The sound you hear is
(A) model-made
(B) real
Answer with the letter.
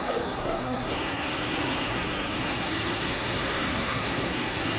A